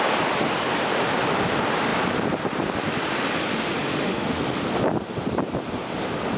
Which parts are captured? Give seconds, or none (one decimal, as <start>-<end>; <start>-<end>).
0.0-3.8; 4.4-6.4